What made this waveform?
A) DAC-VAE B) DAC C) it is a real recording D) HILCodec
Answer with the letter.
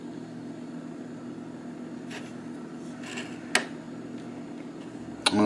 C